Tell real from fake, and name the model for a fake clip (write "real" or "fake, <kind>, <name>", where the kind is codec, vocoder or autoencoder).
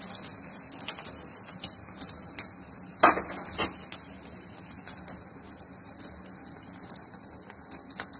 real